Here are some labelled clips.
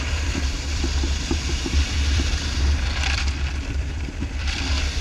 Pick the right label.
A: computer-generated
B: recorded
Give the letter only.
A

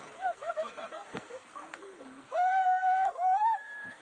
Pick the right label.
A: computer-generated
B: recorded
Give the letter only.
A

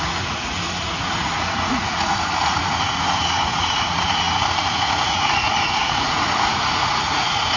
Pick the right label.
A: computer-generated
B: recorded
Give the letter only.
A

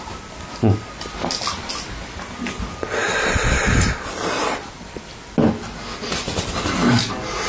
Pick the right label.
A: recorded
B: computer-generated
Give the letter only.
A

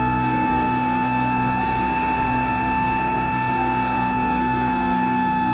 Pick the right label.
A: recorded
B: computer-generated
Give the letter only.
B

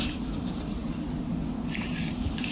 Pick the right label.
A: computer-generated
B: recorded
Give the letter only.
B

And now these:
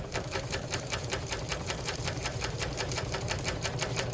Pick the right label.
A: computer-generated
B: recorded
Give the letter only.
A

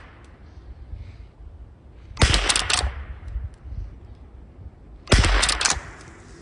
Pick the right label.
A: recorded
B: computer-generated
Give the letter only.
A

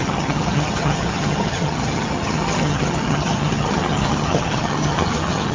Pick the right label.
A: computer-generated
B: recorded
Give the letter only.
A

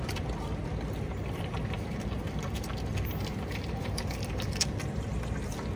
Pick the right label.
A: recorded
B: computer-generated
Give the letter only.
A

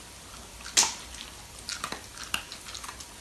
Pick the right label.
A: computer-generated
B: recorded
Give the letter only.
B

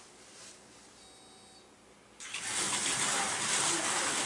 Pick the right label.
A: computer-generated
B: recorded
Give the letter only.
B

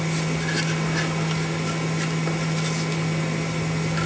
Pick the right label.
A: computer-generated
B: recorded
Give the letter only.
B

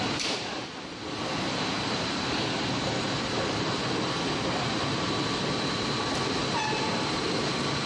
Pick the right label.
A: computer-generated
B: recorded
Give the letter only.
B